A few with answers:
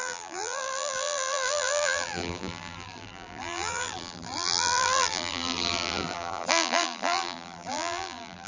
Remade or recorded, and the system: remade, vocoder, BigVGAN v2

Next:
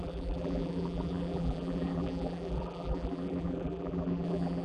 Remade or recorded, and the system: remade, vocoder, BigVGAN v2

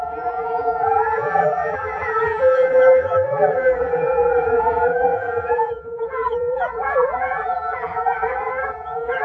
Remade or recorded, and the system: remade, vocoder, BigVGAN v2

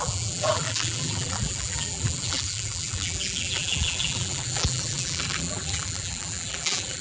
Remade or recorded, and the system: remade, vocoder, BigVGAN v2